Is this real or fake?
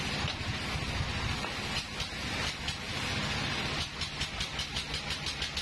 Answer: real